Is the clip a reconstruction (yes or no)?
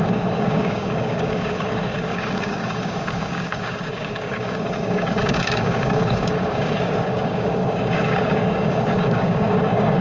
yes